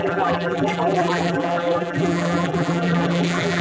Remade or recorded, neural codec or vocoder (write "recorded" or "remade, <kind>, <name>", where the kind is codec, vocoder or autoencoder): remade, vocoder, BigVGAN v2